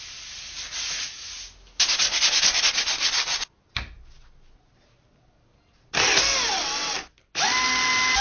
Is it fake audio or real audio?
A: real